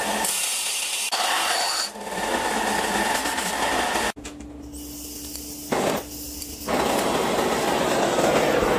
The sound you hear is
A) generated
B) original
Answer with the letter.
B